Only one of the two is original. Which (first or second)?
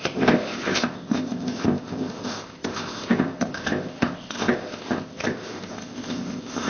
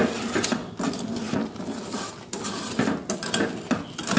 second